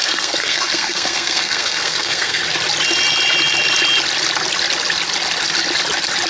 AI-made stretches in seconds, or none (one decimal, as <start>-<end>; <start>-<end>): 0.0-2.4